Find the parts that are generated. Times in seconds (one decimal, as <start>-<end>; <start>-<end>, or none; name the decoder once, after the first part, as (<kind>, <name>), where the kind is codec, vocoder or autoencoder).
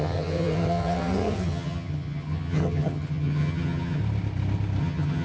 0.0-4.0 (vocoder, HiFi-GAN); 4.8-5.2